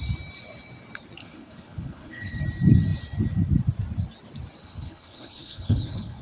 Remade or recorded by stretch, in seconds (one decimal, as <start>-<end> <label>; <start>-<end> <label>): 0.0-1.2 recorded; 1.2-2.4 remade; 2.4-4.6 recorded; 4.6-6.2 remade